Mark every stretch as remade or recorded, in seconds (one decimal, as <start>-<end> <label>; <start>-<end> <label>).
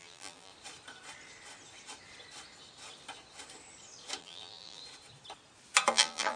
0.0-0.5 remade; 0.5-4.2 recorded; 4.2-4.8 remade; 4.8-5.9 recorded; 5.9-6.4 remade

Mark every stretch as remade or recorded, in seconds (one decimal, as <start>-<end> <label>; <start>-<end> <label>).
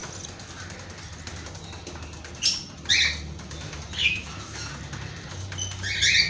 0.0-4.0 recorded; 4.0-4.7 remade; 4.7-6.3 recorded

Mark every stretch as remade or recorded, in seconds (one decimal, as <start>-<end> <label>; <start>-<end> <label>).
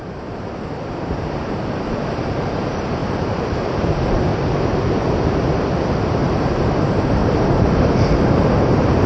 0.0-4.3 remade; 4.3-6.2 recorded; 6.2-9.1 remade